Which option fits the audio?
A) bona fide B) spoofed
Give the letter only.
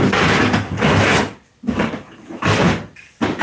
A